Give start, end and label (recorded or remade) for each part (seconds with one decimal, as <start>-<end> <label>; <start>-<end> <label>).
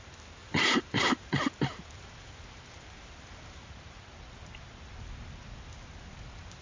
0.0-0.4 recorded; 0.4-4.0 remade; 4.0-6.6 recorded